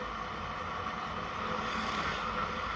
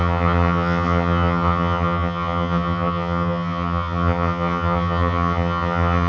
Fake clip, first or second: second